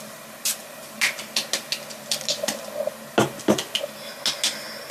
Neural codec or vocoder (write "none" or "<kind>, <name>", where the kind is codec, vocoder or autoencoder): none